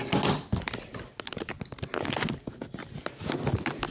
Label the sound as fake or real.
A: real